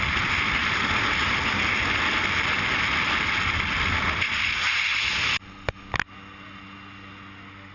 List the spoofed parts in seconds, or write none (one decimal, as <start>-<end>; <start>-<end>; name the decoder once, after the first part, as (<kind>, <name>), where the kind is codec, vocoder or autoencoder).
none